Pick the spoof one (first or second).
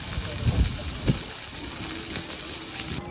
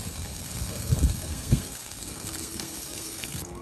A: second